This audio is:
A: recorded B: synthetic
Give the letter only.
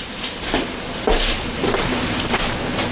B